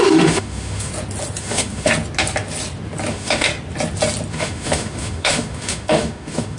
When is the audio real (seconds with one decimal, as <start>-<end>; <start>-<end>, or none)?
0.9-1.4; 1.9-3.1; 3.5-4.3